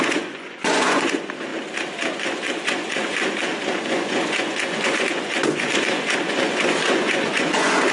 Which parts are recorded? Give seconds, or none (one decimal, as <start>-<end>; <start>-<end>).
1.5-2.1